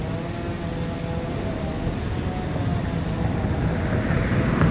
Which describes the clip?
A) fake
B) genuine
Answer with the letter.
B